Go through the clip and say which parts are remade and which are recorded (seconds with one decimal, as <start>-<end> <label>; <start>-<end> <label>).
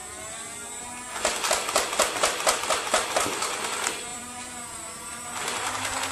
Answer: 0.0-0.8 remade; 0.8-4.1 recorded; 4.1-4.9 remade; 4.9-6.1 recorded